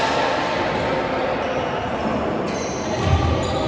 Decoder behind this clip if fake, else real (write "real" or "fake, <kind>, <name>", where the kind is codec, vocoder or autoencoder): real